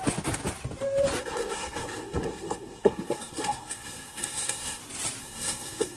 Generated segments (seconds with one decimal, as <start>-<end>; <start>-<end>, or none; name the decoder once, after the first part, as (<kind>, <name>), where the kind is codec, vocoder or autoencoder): 1.2-4.8 (codec, SNAC); 5.2-6.0

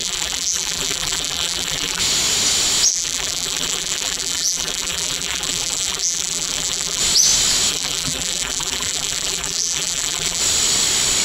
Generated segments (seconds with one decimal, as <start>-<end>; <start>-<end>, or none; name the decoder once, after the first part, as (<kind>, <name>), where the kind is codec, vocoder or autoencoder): 0.0-2.0 (vocoder, BigVGAN v2); 2.9-7.0; 7.7-10.4

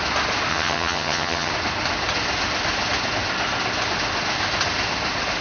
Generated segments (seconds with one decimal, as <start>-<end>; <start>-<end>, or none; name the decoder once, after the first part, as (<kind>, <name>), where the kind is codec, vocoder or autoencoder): 0.5-1.5 (vocoder, HiFi-GAN)

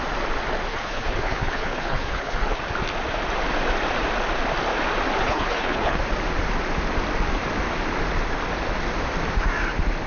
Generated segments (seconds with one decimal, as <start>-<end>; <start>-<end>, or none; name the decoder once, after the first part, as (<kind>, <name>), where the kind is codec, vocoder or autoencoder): 0.7-2.6 (codec, HILCodec); 5.2-6.0

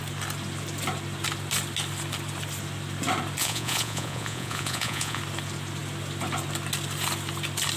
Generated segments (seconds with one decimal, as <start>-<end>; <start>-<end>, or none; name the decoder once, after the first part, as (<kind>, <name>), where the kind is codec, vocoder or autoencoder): 3.4-5.2 (vocoder, Vocos)

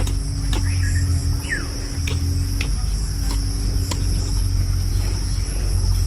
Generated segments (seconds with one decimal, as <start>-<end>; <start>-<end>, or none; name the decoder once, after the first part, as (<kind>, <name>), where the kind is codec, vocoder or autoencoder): none